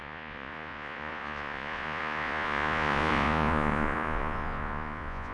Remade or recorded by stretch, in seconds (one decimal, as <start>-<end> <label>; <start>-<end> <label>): 0.0-5.3 remade

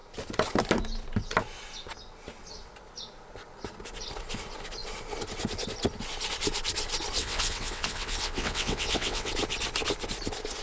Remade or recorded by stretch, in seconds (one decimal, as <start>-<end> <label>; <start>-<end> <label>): 0.0-7.2 recorded; 7.2-9.3 remade; 9.3-10.6 recorded